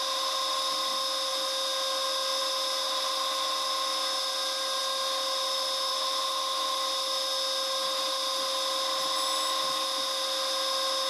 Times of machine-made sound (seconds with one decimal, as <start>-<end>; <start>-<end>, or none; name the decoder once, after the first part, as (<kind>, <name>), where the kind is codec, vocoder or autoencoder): none